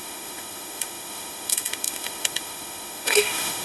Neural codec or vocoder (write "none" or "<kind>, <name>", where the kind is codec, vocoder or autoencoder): autoencoder, DAC-VAE